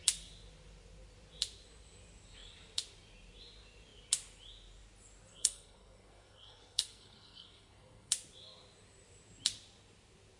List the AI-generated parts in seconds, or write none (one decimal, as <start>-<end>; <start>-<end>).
5.3-8.1